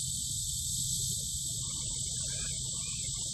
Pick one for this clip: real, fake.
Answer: real